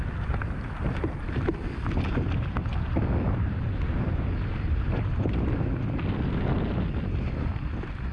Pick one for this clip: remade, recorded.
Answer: recorded